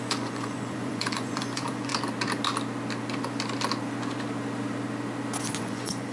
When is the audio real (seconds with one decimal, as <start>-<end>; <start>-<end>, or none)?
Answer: 1.9-5.6